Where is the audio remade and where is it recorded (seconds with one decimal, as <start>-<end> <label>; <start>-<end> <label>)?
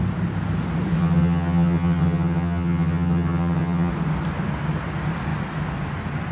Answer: 0.0-1.0 recorded; 1.0-3.9 remade; 3.9-6.3 recorded